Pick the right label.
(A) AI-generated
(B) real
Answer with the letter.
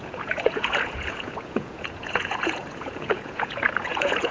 A